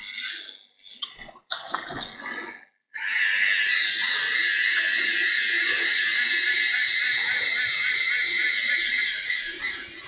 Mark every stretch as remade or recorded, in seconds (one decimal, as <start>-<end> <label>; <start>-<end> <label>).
0.0-1.0 recorded; 1.0-1.5 remade; 1.5-10.1 recorded